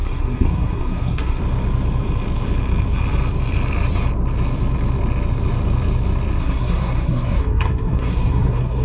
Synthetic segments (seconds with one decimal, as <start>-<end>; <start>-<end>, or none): 0.0-1.4; 6.4-8.8